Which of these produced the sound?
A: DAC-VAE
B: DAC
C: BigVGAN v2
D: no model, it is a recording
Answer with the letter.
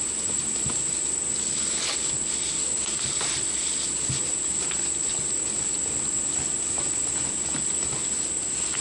D